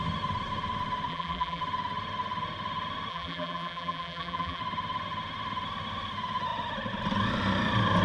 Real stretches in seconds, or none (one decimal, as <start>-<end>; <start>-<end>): 0.0-1.1; 1.6-3.1; 4.6-8.0